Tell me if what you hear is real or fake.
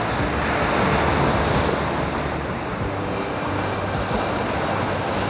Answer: real